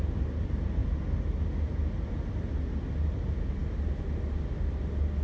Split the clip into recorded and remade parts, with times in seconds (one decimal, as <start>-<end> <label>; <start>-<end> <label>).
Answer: 0.0-5.2 recorded